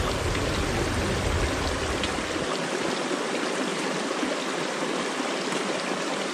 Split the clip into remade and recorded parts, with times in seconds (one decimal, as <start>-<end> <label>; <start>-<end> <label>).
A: 0.0-6.3 recorded